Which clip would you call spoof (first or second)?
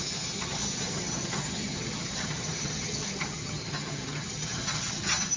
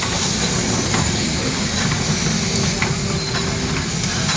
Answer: first